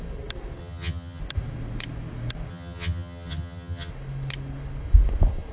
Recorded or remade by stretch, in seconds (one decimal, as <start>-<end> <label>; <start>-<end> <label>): 0.0-0.6 recorded; 0.6-1.2 remade; 1.2-2.5 recorded; 2.5-3.9 remade; 3.9-5.5 recorded